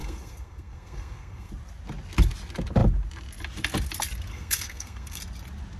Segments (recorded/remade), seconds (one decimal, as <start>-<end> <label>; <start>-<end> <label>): 0.0-1.5 remade; 1.5-4.3 recorded; 4.3-5.2 remade; 5.2-5.8 recorded